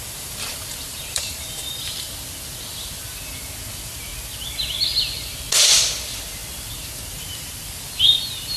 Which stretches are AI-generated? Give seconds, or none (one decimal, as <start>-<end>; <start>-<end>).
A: 0.0-2.1